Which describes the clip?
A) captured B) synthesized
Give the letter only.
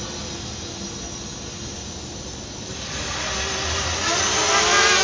A